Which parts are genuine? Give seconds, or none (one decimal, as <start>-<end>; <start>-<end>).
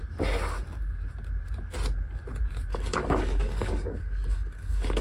0.0-2.7